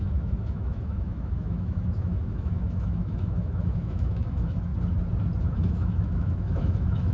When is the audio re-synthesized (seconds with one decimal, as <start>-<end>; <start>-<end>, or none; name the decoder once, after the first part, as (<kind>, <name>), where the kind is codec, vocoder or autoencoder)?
0.0-4.7 (autoencoder, DAC-VAE); 5.4-7.1